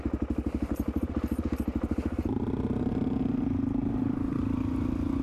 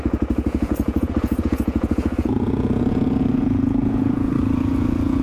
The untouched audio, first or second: first